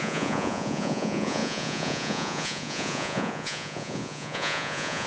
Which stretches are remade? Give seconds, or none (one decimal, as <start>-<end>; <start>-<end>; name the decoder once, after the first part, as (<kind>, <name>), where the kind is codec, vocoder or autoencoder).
0.0-5.1 (vocoder, Vocos)